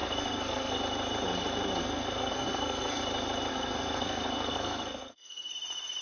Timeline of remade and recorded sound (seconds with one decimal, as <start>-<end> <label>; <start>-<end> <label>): 0.0-0.8 remade; 0.8-1.8 recorded; 1.8-3.0 remade; 3.0-3.5 recorded; 3.5-5.5 remade; 5.5-6.0 recorded